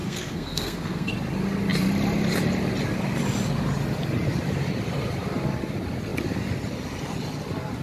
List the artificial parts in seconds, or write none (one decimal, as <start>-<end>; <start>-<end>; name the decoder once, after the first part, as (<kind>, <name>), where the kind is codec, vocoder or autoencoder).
0.0-1.1 (codec, SNAC)